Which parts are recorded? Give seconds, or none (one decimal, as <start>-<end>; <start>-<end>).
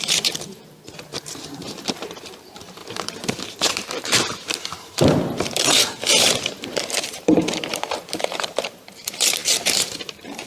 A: none